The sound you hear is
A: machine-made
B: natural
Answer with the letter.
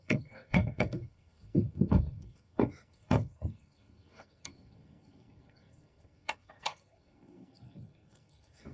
A